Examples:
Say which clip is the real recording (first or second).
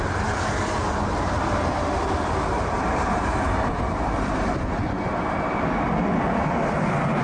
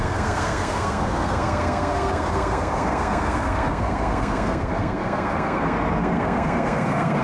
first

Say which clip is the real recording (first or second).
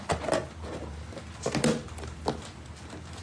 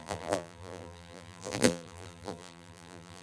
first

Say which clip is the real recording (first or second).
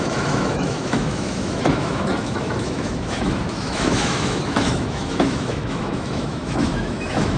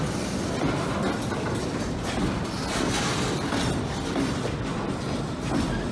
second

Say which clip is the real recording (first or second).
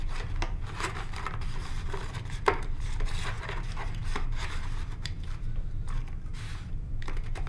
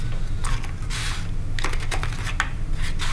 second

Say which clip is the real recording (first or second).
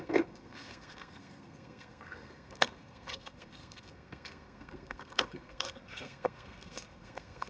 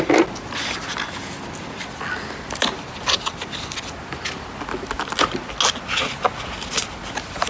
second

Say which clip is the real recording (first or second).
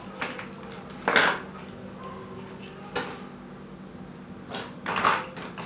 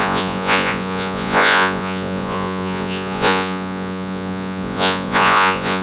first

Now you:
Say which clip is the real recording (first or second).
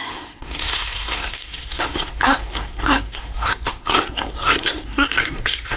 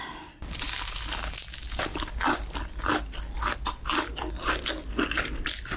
second